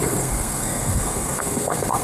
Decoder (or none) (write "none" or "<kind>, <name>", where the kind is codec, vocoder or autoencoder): codec, SNAC